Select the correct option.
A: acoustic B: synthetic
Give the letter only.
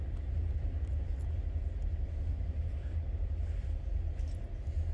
A